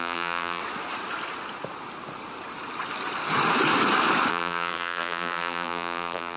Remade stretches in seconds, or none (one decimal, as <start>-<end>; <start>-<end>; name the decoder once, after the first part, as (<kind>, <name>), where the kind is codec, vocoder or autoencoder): 0.0-0.6 (vocoder, BigVGAN v2); 4.3-6.4